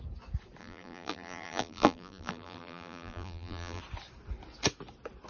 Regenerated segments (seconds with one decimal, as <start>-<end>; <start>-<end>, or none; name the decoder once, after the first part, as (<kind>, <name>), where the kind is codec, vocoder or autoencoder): 0.6-3.8 (vocoder, BigVGAN v2)

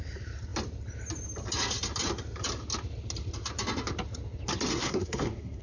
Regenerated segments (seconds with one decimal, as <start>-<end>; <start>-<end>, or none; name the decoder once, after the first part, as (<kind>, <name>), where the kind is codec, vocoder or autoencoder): 4.7-5.6 (codec, SNAC)